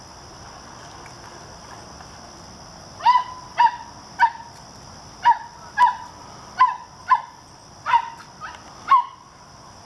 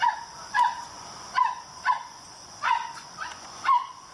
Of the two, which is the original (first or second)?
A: first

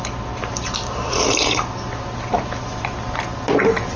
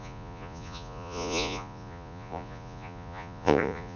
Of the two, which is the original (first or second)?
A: first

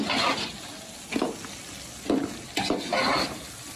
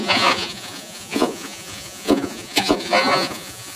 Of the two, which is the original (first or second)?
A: first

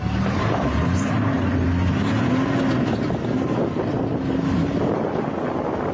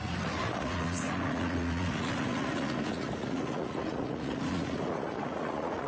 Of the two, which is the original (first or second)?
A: first